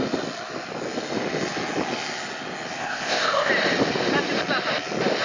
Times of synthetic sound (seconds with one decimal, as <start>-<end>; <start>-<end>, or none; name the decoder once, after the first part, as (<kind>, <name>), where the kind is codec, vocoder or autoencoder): 2.8-3.5 (codec, ZipCodec)